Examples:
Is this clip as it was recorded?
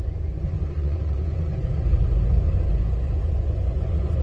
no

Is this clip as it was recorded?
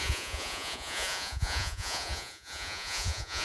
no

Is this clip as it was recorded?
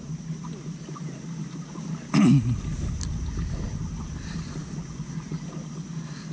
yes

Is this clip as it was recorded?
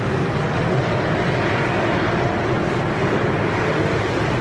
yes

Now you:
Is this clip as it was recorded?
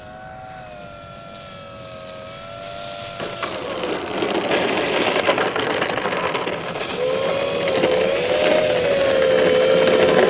yes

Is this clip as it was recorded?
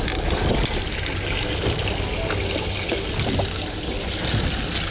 yes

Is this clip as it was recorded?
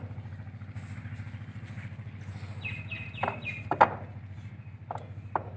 yes